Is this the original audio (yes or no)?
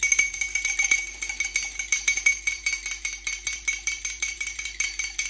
no